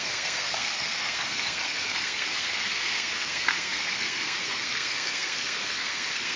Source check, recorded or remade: remade